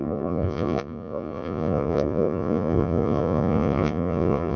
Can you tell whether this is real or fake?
fake